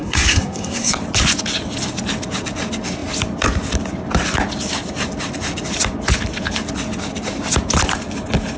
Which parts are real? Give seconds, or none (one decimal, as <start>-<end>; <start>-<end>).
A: 0.9-8.6